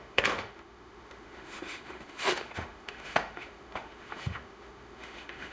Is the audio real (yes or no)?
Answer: no